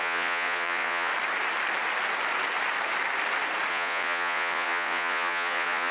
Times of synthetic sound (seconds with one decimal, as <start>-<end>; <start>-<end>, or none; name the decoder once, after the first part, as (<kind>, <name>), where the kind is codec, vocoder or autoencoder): 0.0-1.1 (vocoder, Vocos); 3.7-5.9